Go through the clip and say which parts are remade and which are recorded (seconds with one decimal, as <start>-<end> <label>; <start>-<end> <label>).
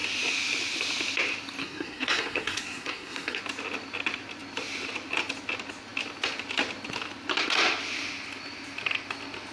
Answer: 0.0-1.6 recorded; 1.6-3.4 remade; 3.4-9.5 recorded